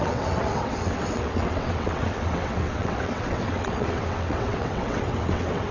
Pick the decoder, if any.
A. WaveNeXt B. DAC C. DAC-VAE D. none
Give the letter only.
A